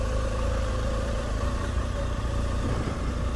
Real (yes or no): no